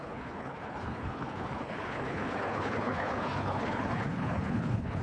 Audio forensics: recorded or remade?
remade